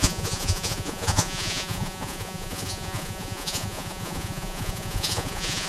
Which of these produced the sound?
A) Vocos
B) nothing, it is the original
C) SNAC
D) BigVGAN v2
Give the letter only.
A